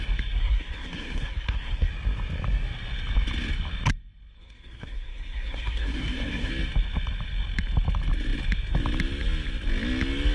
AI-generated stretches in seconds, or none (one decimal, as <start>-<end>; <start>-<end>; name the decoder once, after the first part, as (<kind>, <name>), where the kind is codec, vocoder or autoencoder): 0.4-1.9 (codec, SNAC); 4.4-6.5